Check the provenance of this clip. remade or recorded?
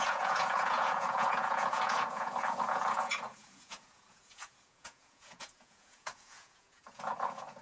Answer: remade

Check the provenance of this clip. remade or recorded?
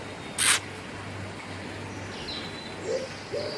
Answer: recorded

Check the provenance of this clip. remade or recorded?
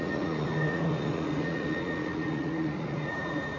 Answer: remade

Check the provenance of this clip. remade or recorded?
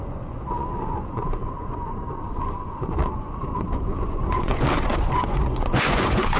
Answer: remade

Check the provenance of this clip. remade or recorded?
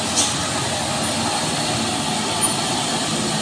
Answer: recorded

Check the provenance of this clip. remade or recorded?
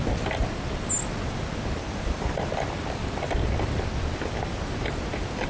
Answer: recorded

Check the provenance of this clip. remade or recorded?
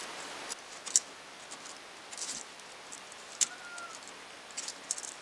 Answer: recorded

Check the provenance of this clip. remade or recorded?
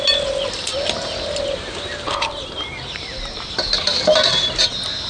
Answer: recorded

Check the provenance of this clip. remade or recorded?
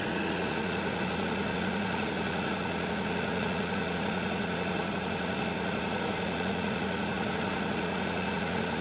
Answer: remade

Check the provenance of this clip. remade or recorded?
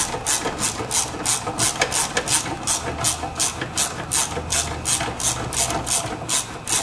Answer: recorded